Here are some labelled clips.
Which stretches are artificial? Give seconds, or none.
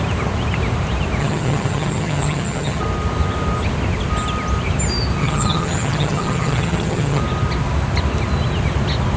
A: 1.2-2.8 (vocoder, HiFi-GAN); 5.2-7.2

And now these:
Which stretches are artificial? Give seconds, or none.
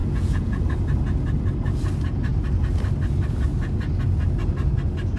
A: 0.0-0.6 (vocoder, Vocos)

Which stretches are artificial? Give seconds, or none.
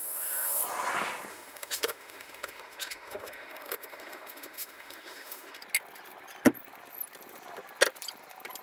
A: 0.0-0.6 (autoencoder, DAC-VAE); 1.3-5.6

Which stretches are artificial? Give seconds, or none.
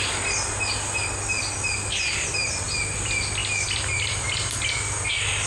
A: none